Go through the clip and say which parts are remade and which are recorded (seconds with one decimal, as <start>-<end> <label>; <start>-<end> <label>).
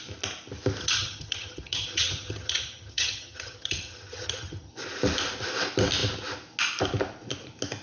0.0-0.8 recorded; 0.8-4.7 remade; 4.7-7.8 recorded